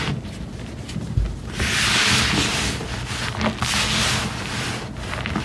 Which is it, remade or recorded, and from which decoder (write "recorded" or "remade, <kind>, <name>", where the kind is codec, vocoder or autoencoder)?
recorded